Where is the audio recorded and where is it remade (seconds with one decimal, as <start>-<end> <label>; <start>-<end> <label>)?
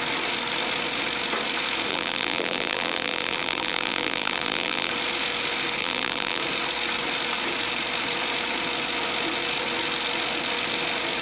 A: 0.0-1.9 recorded; 1.9-4.9 remade; 4.9-5.8 recorded; 5.8-6.4 remade; 6.4-11.2 recorded